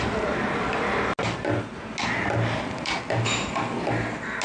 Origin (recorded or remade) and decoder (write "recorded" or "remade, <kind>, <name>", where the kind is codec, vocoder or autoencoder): recorded